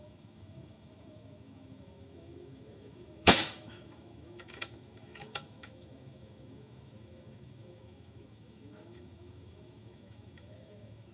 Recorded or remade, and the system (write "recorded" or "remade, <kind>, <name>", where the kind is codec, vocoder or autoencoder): remade, autoencoder, DAC-VAE